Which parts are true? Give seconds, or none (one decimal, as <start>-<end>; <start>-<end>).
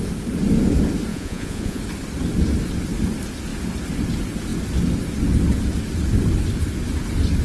0.0-1.1; 1.8-7.4